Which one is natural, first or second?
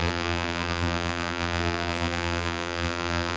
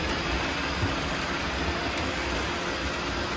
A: second